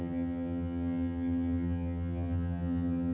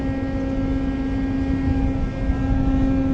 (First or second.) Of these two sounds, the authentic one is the second